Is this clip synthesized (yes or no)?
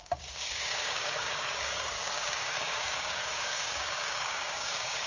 yes